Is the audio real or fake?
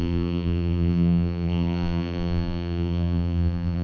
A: fake